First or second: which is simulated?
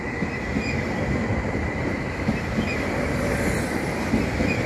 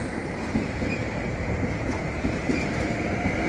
second